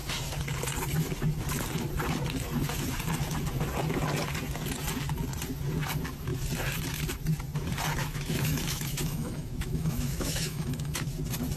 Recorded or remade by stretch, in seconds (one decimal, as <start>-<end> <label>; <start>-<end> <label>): 0.0-8.0 recorded; 8.0-11.1 remade; 11.1-11.6 recorded